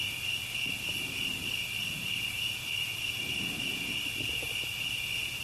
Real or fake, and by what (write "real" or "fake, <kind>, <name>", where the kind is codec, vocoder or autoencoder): real